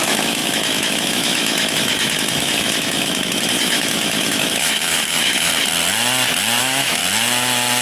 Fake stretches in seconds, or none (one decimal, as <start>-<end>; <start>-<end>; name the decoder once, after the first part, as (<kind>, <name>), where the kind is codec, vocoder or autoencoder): 0.0-5.5 (autoencoder, DAC-VAE); 6.6-7.0